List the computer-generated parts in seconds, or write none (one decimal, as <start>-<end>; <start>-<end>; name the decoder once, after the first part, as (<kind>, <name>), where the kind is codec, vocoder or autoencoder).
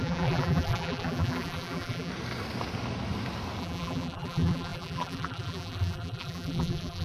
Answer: 0.0-2.1 (vocoder, BigVGAN v2); 3.6-7.0